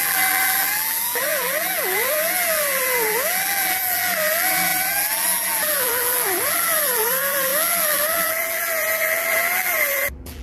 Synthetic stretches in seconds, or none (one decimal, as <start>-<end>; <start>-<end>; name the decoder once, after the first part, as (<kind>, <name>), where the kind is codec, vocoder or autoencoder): 0.0-10.4 (vocoder, BigVGAN v2)